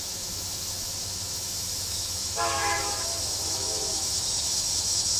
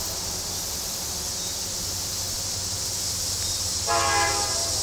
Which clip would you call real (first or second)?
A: second